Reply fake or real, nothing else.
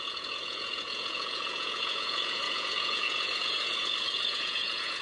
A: fake